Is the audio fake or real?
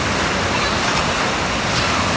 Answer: real